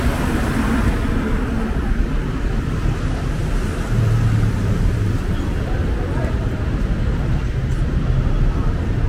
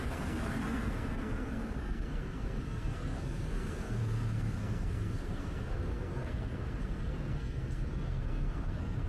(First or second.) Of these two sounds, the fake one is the second